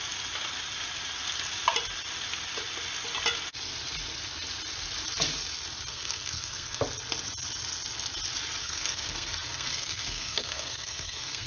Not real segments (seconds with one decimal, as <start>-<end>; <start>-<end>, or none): 5.9-6.8; 8.6-11.5